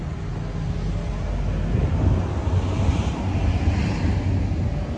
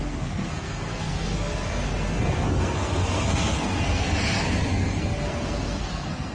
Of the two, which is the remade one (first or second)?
second